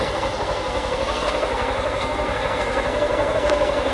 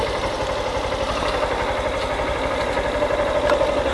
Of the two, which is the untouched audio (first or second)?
second